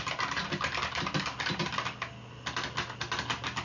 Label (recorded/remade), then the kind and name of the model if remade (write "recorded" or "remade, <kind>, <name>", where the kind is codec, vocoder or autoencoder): recorded